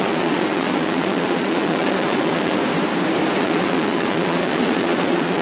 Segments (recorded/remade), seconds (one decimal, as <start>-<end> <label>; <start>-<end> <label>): 0.0-2.6 remade; 2.6-3.4 recorded; 3.4-5.4 remade